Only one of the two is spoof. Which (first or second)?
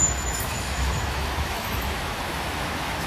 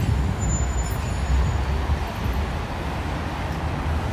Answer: first